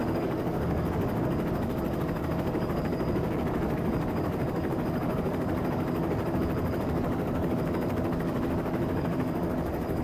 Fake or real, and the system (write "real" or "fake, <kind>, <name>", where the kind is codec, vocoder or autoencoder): fake, codec, DAC